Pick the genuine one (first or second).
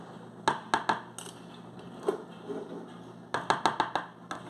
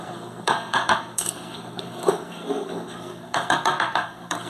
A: first